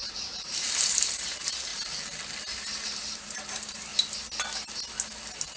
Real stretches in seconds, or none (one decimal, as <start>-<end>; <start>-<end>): 1.7-2.8; 3.9-5.6